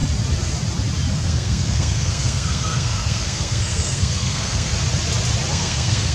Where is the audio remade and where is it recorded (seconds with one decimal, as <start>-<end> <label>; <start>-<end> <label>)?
0.0-1.1 recorded; 1.1-4.7 remade; 4.7-5.5 recorded; 5.5-6.1 remade